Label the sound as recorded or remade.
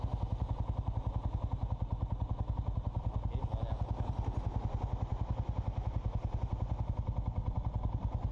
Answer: recorded